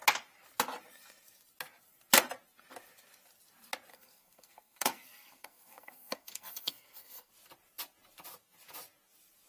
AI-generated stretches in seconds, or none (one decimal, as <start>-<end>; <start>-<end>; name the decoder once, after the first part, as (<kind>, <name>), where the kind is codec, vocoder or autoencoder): 3.9-7.3 (codec, SNAC)